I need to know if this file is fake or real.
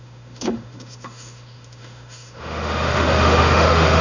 fake